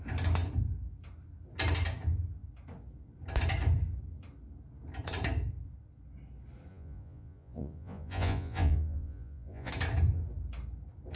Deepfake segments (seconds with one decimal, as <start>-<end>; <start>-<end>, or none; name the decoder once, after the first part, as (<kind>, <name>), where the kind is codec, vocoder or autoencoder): 6.7-9.7 (vocoder, Vocos)